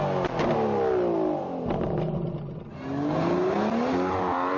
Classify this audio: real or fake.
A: real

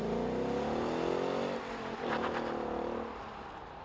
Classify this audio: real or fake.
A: real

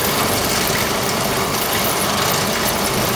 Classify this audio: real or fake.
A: fake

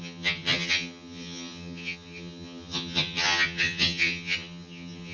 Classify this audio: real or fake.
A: fake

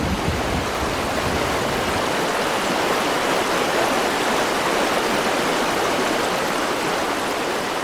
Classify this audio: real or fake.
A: real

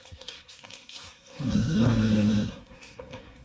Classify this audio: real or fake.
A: fake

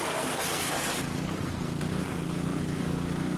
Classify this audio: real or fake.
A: fake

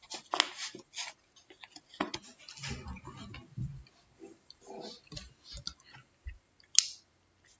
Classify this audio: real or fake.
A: real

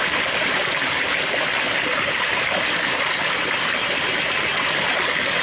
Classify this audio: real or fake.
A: real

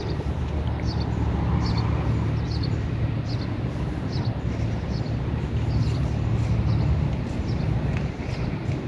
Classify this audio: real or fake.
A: real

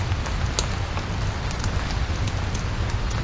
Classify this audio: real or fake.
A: real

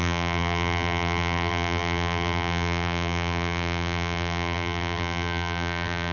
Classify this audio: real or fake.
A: fake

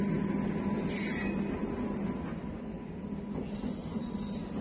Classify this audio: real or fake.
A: real